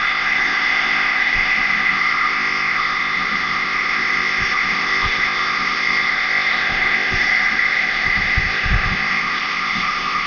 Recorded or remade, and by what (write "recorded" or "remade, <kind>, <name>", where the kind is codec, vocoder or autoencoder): remade, codec, ZipCodec